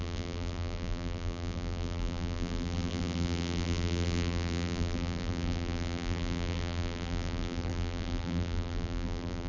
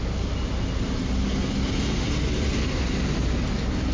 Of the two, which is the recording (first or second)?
second